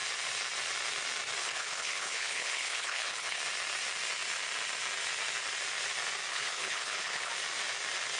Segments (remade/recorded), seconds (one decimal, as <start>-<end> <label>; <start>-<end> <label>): 0.0-1.4 recorded; 1.4-3.4 remade; 3.4-6.3 recorded; 6.3-7.3 remade; 7.3-8.2 recorded